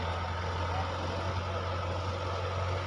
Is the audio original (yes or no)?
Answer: yes